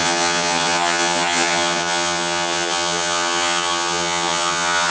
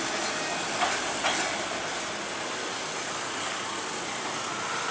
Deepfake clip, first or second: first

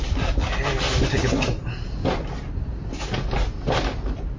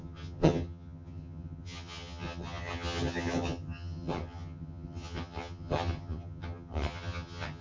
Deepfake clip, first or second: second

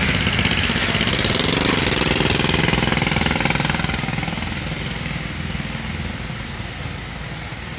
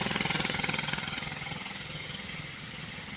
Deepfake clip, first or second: second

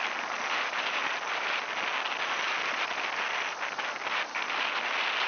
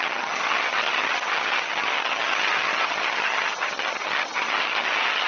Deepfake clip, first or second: second